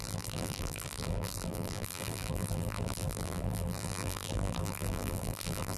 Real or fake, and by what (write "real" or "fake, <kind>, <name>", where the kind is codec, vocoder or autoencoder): fake, vocoder, BigVGAN v2